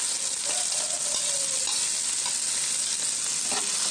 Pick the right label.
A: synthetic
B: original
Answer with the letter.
B